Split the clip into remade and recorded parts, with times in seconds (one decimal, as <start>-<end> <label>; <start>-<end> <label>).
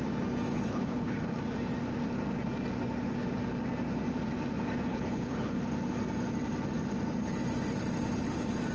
0.0-0.5 recorded; 0.5-1.4 remade; 1.4-4.9 recorded; 4.9-5.6 remade; 5.6-8.7 recorded